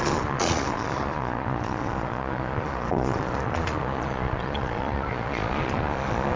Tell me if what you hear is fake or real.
fake